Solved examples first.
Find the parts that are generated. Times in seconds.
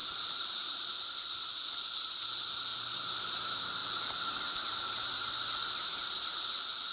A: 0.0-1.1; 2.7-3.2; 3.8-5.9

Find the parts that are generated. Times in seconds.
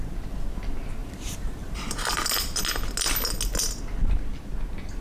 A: 1.0-1.9